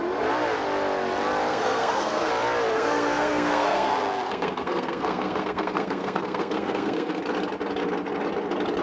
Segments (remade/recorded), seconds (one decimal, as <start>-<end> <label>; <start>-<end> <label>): 0.0-1.5 recorded; 1.5-2.3 remade; 2.3-2.7 recorded; 2.7-7.2 remade; 7.2-8.8 recorded